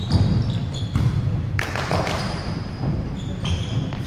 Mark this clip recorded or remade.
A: remade